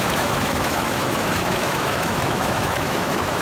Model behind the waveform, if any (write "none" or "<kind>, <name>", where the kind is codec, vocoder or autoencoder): autoencoder, DAC-VAE